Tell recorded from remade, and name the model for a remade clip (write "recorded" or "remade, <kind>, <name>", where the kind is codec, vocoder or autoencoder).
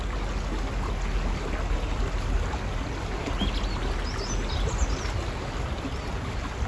recorded